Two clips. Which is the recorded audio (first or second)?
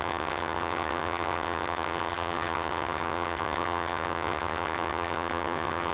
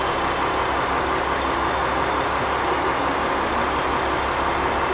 second